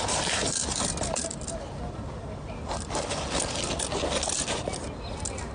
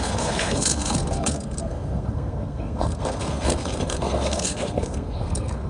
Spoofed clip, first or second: second